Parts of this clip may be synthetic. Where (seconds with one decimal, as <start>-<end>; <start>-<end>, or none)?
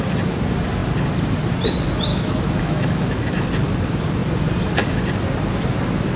2.1-3.4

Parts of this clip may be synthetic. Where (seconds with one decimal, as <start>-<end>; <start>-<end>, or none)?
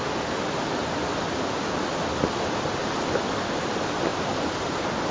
none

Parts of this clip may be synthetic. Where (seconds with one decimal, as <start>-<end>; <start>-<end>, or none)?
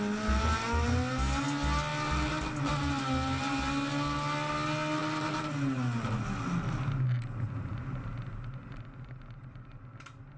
none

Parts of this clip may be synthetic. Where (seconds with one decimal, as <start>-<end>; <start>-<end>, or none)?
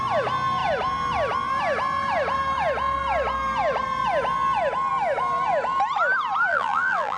6.5-7.2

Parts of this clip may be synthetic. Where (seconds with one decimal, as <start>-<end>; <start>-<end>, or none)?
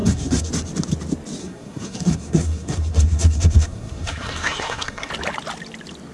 0.0-0.5; 1.4-5.1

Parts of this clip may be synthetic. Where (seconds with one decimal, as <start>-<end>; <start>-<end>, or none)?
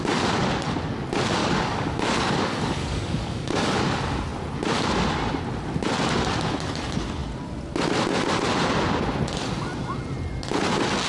1.4-3.8